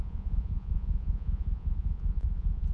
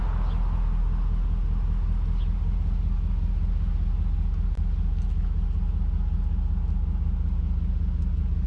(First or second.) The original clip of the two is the second